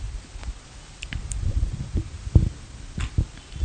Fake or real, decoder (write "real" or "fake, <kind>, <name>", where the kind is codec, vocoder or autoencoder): real